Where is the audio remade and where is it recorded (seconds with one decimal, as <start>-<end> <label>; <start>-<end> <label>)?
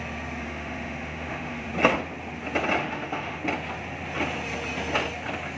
0.0-0.4 recorded; 0.4-1.7 remade; 1.7-2.8 recorded; 2.8-3.4 remade; 3.4-5.6 recorded